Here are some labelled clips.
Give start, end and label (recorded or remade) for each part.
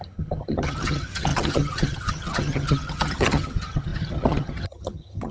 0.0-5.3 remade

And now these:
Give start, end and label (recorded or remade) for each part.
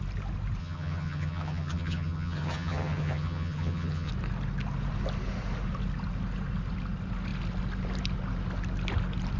0.0-0.6 recorded; 0.6-4.1 remade; 4.1-9.4 recorded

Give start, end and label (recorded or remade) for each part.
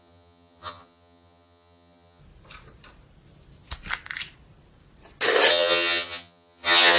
0.0-2.2 remade; 2.2-5.5 recorded; 5.5-7.0 remade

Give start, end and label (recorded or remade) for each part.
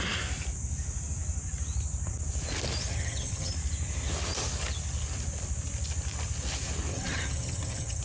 0.0-2.9 recorded; 2.9-3.5 remade; 3.5-6.9 recorded; 6.9-8.0 remade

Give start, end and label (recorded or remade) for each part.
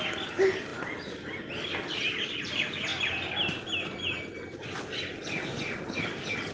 0.0-6.5 recorded